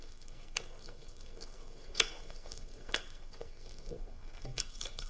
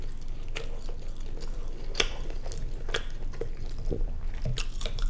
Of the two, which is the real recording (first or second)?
second